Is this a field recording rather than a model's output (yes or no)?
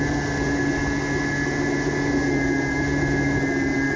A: yes